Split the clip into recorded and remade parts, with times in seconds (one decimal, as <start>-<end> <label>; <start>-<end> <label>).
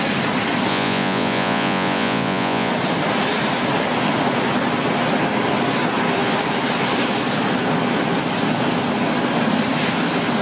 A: 0.0-0.7 recorded; 0.7-2.7 remade; 2.7-10.4 recorded